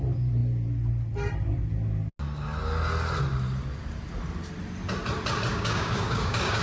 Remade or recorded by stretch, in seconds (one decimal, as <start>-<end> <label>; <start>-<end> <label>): 0.0-5.5 recorded; 5.5-6.6 remade